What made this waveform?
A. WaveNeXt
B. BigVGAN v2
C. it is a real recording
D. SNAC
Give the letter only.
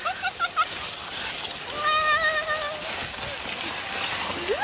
C